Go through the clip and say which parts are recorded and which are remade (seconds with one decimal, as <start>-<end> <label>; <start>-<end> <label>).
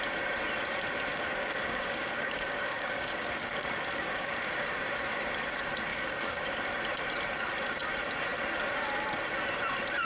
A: 0.0-1.1 recorded; 1.1-4.8 remade; 4.8-5.9 recorded; 5.9-6.6 remade; 6.6-10.0 recorded